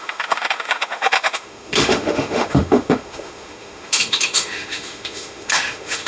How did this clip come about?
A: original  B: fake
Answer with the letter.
B